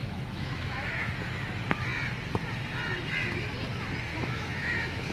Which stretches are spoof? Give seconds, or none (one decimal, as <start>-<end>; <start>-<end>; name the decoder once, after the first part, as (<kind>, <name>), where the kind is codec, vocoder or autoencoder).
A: 0.0-1.1 (autoencoder, DAC-VAE); 4.1-5.1